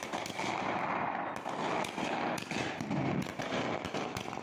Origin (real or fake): real